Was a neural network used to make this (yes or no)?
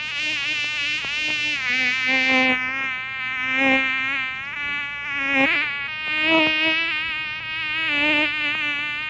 no